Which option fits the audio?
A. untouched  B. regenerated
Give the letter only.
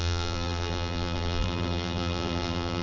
B